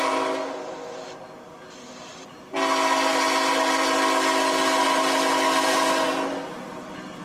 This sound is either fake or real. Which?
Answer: real